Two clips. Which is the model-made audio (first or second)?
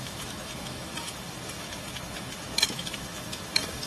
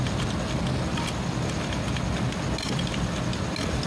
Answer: first